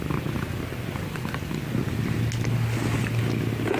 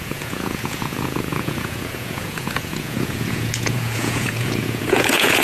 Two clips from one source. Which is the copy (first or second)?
second